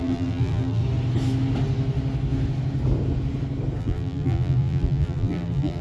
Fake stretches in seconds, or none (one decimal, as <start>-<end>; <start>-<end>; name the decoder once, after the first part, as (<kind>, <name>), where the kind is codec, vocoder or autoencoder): 0.0-0.8 (vocoder, BigVGAN v2); 3.8-5.8